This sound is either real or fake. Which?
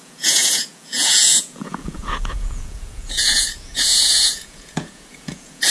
fake